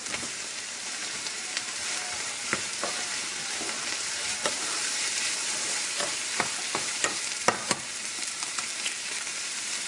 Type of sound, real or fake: fake